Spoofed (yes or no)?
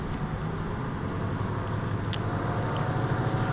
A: no